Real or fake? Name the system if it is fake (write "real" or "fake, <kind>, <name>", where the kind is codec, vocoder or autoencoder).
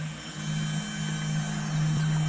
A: real